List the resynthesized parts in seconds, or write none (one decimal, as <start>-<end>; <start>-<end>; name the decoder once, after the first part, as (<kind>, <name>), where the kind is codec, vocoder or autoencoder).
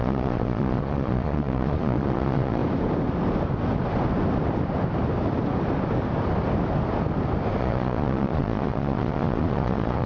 0.0-2.6 (vocoder, Vocos); 7.6-10.1